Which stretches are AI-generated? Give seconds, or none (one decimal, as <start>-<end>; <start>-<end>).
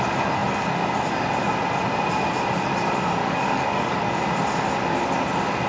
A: 3.2-4.1